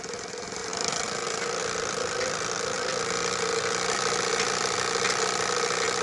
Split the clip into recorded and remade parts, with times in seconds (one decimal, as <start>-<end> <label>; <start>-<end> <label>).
0.0-6.0 recorded